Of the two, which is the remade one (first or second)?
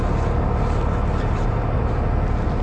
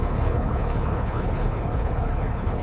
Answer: second